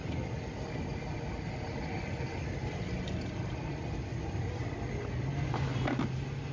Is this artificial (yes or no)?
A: no